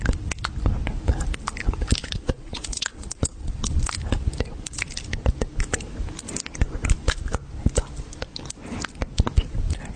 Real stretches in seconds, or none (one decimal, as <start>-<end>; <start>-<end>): 0.0-2.0; 3.8-10.0

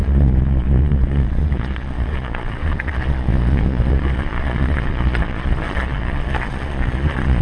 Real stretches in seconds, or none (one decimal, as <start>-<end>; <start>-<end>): none

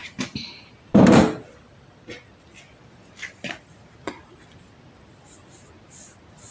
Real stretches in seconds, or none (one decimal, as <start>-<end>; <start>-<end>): 0.0-6.5

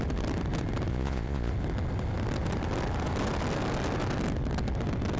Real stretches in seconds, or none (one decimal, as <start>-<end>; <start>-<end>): 0.0-0.9; 1.5-5.2

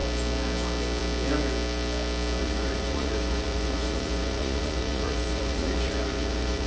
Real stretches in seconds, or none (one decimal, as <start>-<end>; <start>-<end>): 0.0-2.4

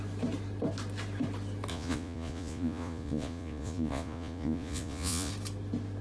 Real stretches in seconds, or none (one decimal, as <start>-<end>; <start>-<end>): 0.0-1.7; 5.3-6.0

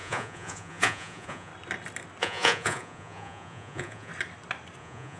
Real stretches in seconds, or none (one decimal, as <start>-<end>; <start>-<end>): 1.5-2.2; 4.1-4.8

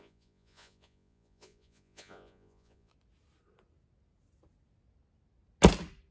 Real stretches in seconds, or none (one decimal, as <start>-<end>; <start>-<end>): 2.9-6.1